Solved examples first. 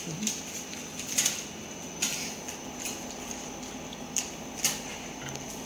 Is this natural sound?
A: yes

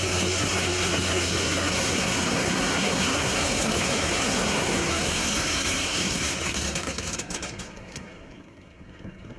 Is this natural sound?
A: no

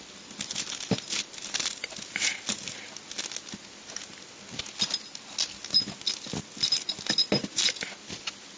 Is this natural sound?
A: yes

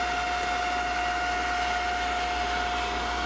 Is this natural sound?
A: yes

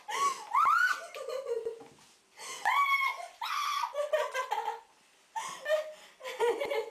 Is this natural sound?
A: yes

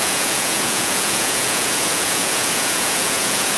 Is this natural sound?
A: no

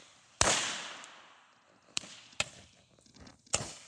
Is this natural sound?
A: no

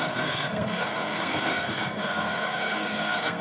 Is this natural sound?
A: no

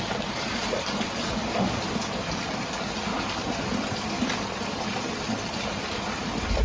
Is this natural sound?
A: yes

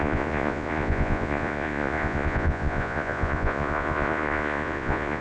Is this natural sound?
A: no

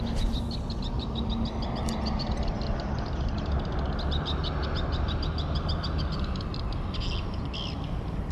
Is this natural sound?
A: yes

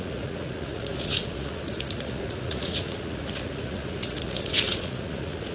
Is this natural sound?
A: no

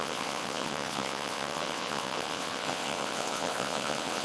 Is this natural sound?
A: no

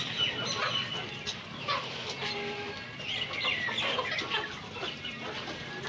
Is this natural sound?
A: yes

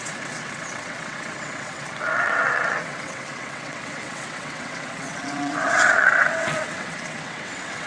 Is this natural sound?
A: no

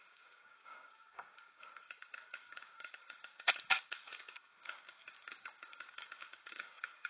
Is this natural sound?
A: no